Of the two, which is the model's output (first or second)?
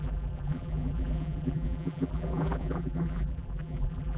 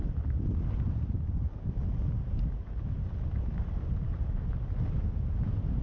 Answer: first